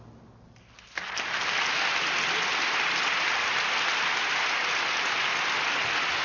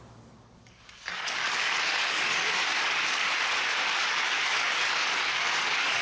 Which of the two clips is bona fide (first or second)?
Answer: first